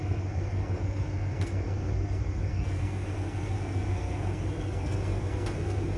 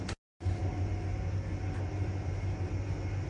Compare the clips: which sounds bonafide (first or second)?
second